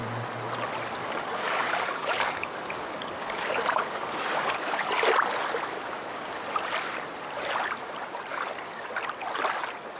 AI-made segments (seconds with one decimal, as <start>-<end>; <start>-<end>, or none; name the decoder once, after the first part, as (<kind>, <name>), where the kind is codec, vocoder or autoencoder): 1.0-4.9 (codec, DAC); 8.3-8.9